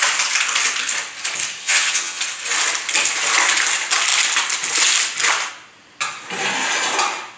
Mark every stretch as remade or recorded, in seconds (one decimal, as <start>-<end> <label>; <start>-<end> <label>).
0.0-1.6 recorded; 1.6-2.2 remade; 2.2-7.4 recorded